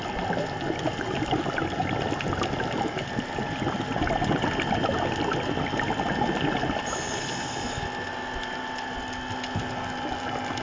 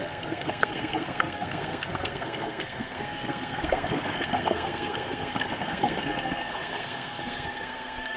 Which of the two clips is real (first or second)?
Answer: first